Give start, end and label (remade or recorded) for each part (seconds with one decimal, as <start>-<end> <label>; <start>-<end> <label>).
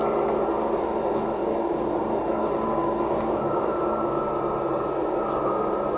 0.0-1.4 recorded; 1.4-1.9 remade; 1.9-2.4 recorded; 2.4-4.2 remade; 4.2-6.0 recorded